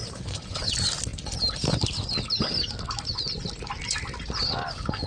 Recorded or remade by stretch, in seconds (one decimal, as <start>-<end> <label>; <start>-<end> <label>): 0.0-0.7 remade; 0.7-5.1 recorded